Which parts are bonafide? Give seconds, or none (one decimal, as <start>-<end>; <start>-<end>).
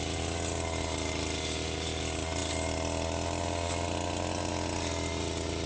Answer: 0.0-5.7